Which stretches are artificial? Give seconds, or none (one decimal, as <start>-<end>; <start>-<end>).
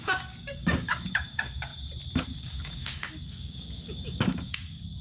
0.0-1.7; 2.2-5.0